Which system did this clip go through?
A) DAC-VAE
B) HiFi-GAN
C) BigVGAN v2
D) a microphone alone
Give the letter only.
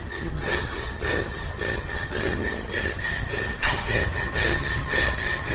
B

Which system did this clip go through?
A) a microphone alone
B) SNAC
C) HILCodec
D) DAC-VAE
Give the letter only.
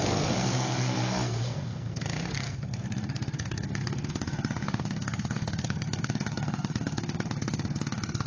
B